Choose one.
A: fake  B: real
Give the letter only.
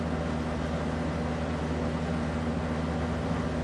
B